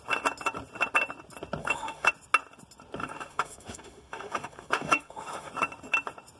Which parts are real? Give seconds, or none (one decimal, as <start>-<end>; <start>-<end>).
0.0-1.6; 2.1-3.0; 5.5-6.4